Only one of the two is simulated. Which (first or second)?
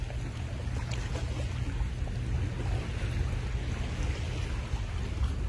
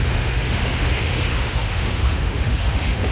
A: second